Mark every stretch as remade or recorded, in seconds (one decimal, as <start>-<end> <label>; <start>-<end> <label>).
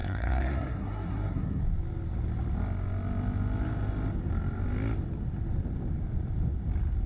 0.0-1.6 remade; 1.6-7.1 recorded